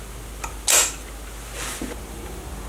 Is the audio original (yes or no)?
yes